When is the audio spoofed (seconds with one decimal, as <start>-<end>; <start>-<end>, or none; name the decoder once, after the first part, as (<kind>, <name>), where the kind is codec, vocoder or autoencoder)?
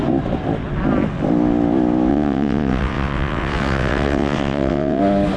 2.1-5.0 (vocoder, WaveNeXt)